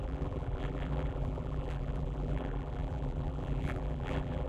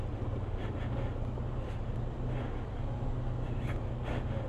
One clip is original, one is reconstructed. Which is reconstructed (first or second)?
first